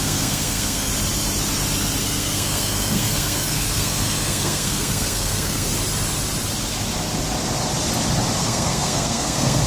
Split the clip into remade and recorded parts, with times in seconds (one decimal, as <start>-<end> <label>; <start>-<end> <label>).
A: 0.0-0.9 remade; 0.9-2.0 recorded; 2.0-5.7 remade; 5.7-8.4 recorded; 8.4-9.7 remade